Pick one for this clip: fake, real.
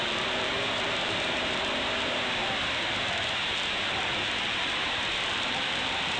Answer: fake